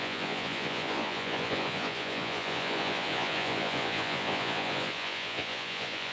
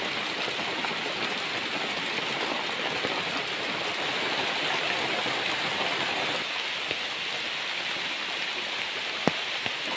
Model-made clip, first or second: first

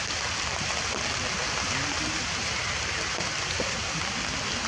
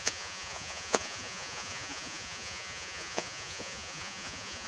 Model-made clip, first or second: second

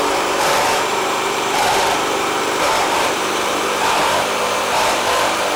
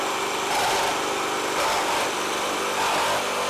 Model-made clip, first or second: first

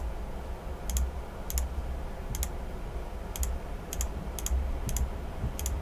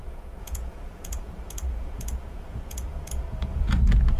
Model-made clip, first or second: second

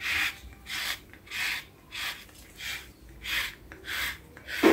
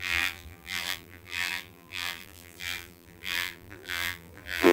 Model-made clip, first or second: second